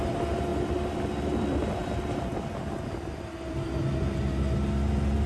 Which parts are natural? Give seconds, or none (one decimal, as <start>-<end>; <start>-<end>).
0.0-5.3

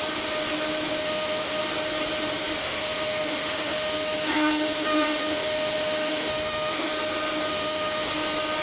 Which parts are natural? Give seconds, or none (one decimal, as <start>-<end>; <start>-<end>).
0.0-1.0; 1.6-2.6; 6.9-7.5; 8.1-8.6

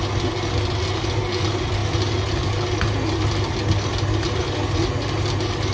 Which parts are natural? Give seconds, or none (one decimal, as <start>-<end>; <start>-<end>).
0.0-5.7

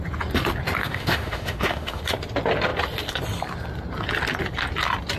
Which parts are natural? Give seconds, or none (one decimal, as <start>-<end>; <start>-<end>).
0.0-0.8; 2.0-5.2

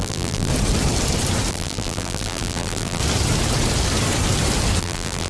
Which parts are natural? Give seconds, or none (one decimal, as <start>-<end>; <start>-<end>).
0.5-1.5; 3.0-4.8

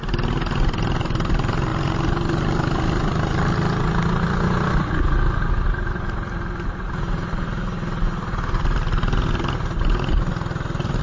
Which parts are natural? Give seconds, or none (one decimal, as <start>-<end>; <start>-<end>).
0.0-11.0

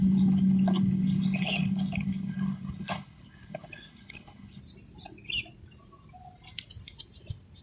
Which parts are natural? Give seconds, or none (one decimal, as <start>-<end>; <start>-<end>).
4.6-7.6

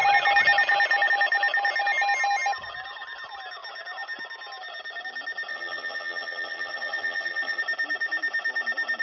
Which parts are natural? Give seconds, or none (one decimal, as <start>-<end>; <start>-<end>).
0.0-5.5; 7.6-9.0